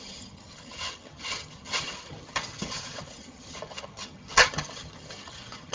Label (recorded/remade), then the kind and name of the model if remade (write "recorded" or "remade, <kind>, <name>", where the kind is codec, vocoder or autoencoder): remade, vocoder, HiFi-GAN